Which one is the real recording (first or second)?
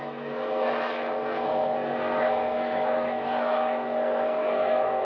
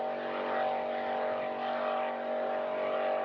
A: second